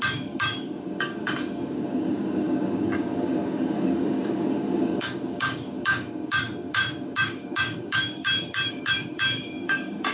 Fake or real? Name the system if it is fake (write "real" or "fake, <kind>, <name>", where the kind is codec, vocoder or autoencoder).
fake, codec, DAC